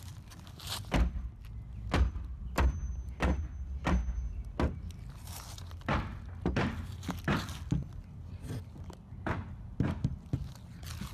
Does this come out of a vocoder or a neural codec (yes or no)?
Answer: no